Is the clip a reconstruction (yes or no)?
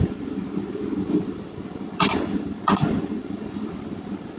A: yes